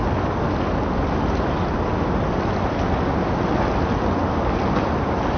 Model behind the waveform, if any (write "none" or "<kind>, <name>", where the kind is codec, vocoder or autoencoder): none